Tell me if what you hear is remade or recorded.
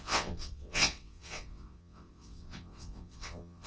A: remade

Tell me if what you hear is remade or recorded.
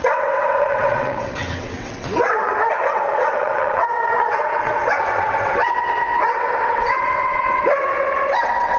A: remade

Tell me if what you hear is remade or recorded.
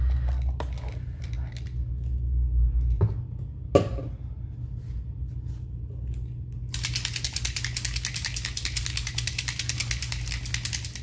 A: recorded